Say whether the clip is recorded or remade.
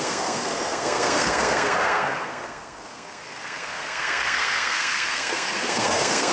remade